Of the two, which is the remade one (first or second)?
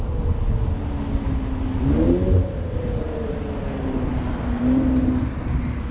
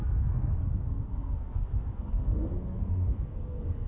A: second